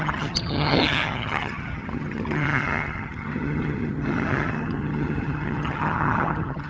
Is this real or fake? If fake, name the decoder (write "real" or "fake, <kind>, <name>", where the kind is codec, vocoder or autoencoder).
fake, vocoder, HiFi-GAN